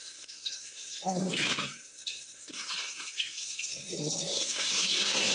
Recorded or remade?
remade